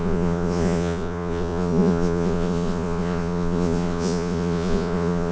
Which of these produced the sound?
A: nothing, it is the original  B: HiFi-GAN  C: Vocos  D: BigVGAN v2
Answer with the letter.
C